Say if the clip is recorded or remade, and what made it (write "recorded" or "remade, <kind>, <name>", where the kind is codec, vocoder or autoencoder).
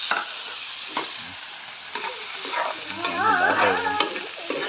recorded